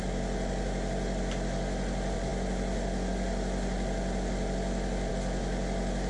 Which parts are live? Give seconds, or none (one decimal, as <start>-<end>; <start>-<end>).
0.0-6.1